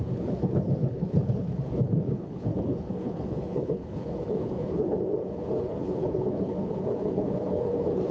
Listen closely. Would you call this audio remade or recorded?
remade